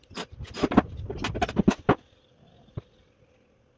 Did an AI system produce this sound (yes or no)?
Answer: no